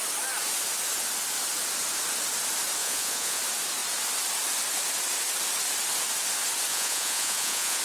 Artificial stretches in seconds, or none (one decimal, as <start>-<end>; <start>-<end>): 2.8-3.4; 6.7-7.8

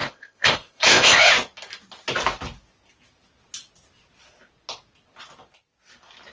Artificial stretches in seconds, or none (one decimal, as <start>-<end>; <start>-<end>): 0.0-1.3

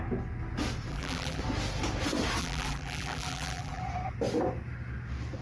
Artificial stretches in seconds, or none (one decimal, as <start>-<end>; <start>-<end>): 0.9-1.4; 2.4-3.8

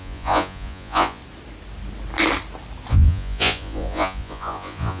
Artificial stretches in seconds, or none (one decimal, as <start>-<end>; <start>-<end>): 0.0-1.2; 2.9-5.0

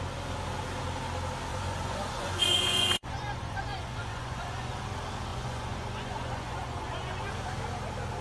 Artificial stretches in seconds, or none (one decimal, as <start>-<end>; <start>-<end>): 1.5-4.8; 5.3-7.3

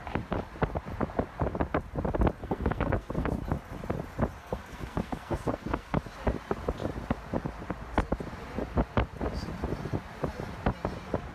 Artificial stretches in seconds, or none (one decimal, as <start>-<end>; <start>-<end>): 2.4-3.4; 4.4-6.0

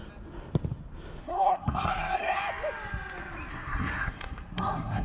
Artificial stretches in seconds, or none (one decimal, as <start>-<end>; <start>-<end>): 1.2-2.4; 3.5-5.0